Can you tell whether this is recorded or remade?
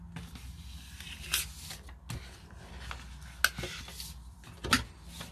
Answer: recorded